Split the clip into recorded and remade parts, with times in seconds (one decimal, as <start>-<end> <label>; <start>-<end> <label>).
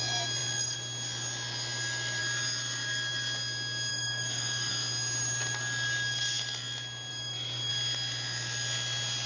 0.0-3.9 recorded; 3.9-4.7 remade; 4.7-7.1 recorded; 7.1-7.7 remade; 7.7-9.3 recorded